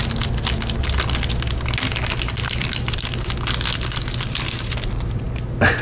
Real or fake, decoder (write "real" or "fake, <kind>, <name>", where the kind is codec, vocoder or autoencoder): real